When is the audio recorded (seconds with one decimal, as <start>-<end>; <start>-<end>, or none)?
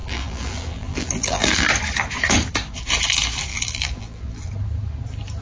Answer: 1.7-3.5; 4.5-5.4